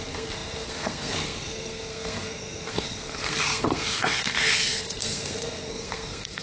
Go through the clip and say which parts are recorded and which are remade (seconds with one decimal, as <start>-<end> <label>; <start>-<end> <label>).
0.0-6.4 remade